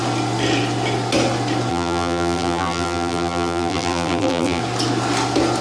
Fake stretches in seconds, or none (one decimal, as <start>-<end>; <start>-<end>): 1.7-4.6